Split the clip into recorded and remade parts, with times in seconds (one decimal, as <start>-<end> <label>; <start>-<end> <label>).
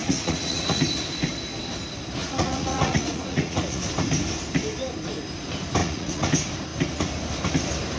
0.0-0.8 remade; 0.8-2.2 recorded; 2.2-3.9 remade; 3.9-5.8 recorded; 5.8-6.3 remade; 6.3-8.0 recorded